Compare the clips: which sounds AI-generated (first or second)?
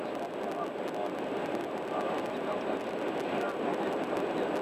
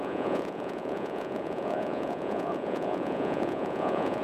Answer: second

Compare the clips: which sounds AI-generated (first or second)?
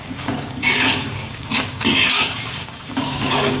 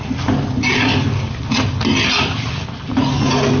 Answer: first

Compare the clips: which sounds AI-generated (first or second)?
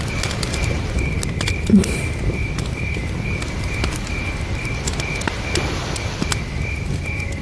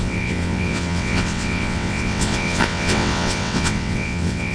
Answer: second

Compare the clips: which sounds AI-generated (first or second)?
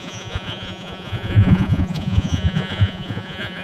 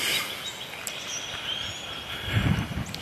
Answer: first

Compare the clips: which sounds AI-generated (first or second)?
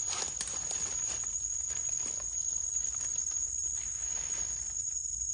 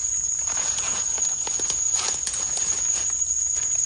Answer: second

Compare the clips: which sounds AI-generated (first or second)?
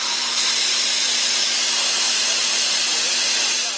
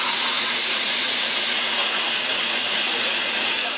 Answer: second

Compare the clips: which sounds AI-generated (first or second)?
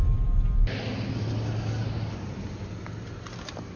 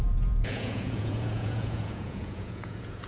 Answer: second